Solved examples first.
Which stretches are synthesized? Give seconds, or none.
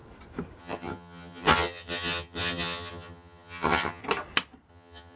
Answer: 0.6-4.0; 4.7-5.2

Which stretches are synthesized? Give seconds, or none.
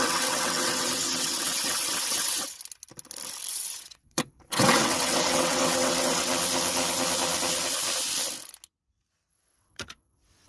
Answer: 0.0-2.6; 3.5-6.3; 9.3-10.5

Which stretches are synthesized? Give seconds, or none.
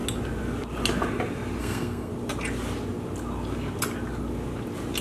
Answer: 1.6-2.1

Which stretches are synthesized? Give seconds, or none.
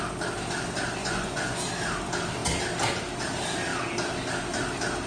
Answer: 1.0-1.6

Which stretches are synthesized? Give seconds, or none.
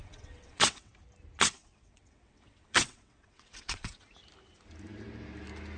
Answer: 0.0-0.9; 1.6-4.1